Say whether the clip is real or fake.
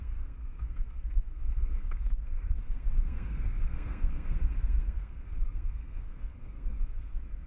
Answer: fake